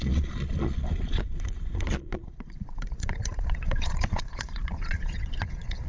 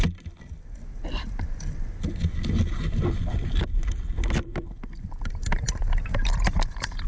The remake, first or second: first